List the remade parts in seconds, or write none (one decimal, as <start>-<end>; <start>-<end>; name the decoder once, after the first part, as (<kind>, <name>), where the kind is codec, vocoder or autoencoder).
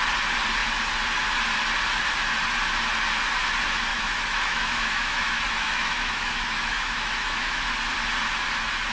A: 3.9-7.7 (autoencoder, DAC-VAE)